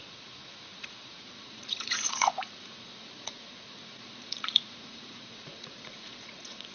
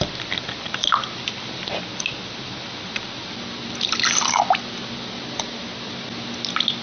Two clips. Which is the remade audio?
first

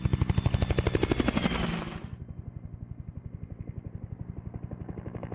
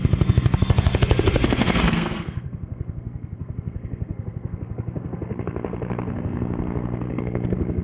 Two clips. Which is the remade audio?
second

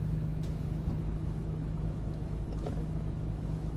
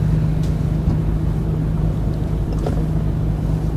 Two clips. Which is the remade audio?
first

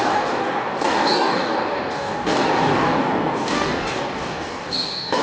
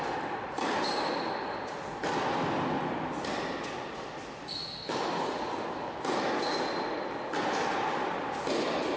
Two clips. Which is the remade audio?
first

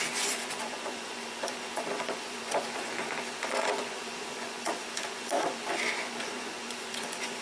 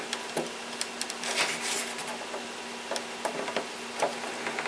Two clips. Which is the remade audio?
first